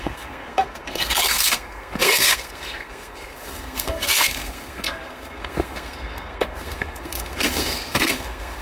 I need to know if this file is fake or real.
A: fake